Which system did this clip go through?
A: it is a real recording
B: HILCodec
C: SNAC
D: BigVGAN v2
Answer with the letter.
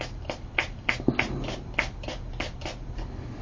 A